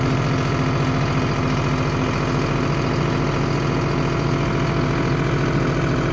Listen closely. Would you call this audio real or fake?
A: real